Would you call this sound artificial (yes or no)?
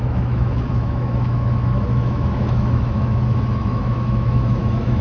yes